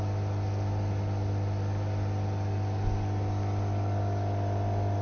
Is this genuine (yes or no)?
yes